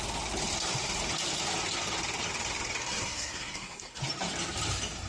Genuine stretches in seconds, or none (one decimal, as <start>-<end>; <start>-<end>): 0.0-2.8; 4.0-5.1